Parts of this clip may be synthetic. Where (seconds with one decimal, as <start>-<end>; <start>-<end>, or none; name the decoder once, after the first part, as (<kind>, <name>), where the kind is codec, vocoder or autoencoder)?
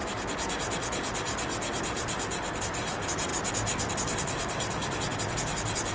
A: 1.8-3.3 (vocoder, BigVGAN v2); 3.9-4.8